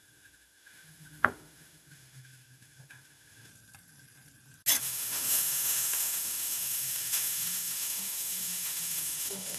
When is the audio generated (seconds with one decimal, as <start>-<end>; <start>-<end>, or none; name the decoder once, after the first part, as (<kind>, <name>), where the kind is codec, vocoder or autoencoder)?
0.0-3.5 (autoencoder, DAC-VAE); 4.8-9.6